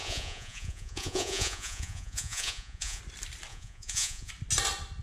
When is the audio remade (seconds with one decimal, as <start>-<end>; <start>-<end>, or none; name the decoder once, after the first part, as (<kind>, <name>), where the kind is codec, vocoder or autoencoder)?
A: 0.0-3.0 (vocoder, Vocos); 3.5-4.3